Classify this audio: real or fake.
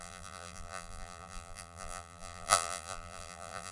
fake